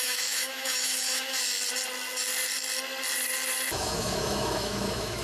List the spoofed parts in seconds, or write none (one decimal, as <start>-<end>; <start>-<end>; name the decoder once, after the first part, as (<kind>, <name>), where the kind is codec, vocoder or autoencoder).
0.0-1.4 (autoencoder, DAC-VAE); 3.7-5.2